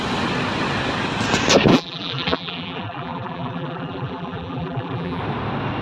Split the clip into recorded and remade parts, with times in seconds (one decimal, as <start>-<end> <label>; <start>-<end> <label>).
0.0-1.7 recorded; 1.7-5.2 remade; 5.2-5.8 recorded